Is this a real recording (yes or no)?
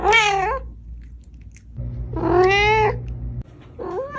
yes